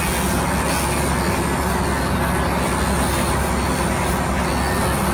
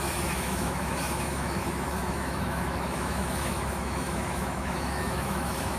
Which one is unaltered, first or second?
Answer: first